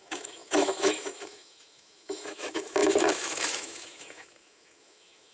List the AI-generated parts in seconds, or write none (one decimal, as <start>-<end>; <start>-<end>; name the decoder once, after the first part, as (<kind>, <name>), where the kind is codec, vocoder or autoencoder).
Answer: 0.0-5.3 (autoencoder, DAC-VAE)